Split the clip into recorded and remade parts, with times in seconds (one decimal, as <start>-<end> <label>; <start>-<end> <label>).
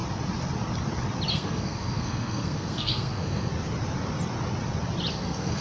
0.0-1.3 recorded; 1.3-3.5 remade; 3.5-5.1 recorded; 5.1-5.6 remade